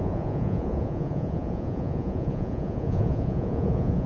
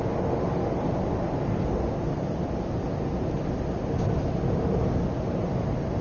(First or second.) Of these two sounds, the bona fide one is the second